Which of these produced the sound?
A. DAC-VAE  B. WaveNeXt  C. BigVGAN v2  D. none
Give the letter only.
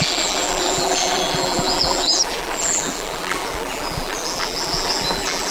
C